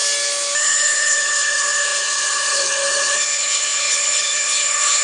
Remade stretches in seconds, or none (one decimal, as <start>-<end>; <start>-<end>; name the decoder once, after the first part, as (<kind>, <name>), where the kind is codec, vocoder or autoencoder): 0.6-5.0 (codec, HILCodec)